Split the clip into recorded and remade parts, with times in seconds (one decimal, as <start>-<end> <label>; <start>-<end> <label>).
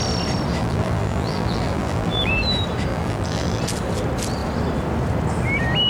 0.0-0.6 recorded; 0.6-2.3 remade; 2.3-2.9 recorded; 2.9-3.6 remade; 3.6-5.9 recorded